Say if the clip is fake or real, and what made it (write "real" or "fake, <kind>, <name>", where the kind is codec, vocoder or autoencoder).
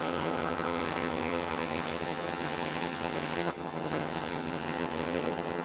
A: fake, vocoder, HiFi-GAN